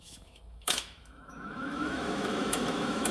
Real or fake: fake